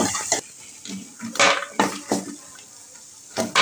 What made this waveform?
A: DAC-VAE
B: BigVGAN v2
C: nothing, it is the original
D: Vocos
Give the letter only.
C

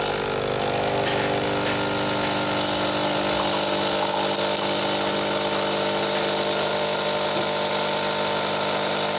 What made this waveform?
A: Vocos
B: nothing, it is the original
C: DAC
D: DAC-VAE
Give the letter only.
B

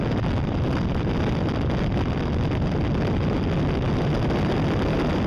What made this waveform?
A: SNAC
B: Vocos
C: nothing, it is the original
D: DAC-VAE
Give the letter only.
C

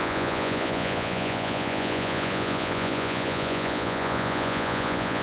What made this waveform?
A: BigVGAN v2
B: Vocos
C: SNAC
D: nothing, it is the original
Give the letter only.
B